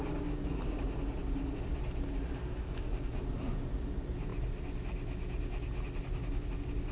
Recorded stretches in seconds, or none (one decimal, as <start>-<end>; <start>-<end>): 0.0-2.4; 3.2-6.9